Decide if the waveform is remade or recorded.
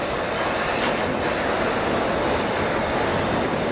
recorded